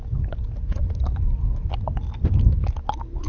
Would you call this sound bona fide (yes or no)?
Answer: yes